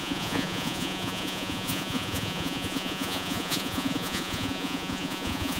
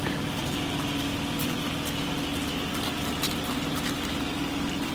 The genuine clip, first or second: second